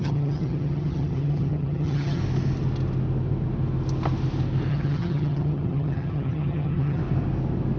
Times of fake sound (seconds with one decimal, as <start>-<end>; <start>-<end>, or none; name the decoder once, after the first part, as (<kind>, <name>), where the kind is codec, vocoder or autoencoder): 0.0-2.2 (vocoder, HiFi-GAN); 4.7-7.0